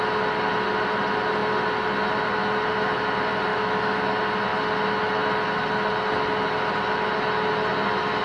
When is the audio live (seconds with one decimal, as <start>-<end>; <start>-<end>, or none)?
0.0-3.5; 4.0-8.2